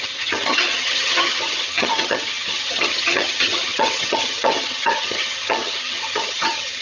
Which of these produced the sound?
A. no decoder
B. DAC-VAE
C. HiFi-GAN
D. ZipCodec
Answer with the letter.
C